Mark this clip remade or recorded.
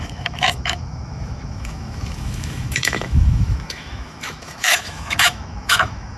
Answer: remade